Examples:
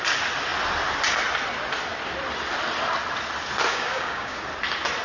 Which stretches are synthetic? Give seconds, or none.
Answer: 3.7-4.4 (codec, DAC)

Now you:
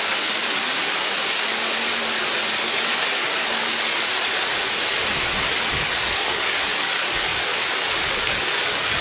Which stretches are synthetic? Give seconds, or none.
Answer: 0.0-1.6 (codec, DAC); 3.1-4.1; 5.7-9.0

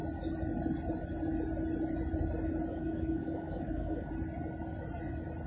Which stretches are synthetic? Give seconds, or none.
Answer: 2.7-4.1 (codec, DAC)

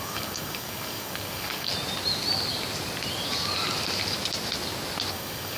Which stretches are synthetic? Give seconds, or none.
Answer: 0.0-1.7 (codec, DAC); 5.1-5.6